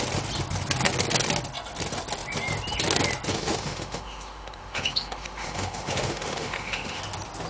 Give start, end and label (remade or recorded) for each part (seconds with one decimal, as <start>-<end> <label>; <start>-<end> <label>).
0.0-3.3 recorded; 3.3-7.0 remade; 7.0-7.5 recorded